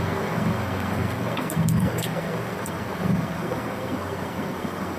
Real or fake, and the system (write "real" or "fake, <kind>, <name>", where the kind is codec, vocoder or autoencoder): fake, codec, SNAC